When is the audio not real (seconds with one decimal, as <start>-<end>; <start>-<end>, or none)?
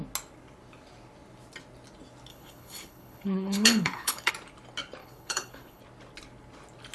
2.3-4.3; 5.0-5.8